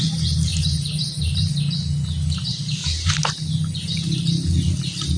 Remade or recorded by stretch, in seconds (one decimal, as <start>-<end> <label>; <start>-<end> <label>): 0.0-0.5 recorded; 0.5-1.5 remade; 1.5-2.8 recorded; 2.8-3.5 remade; 3.5-5.2 recorded